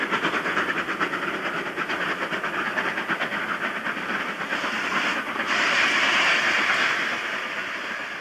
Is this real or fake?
real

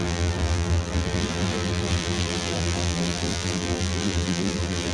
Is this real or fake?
fake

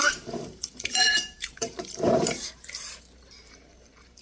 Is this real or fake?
fake